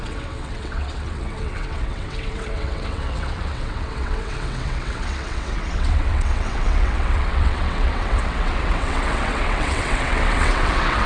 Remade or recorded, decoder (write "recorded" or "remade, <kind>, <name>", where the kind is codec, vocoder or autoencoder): remade, vocoder, WaveNeXt